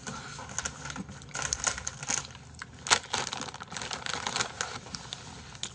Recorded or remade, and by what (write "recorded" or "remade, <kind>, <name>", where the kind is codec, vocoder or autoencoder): recorded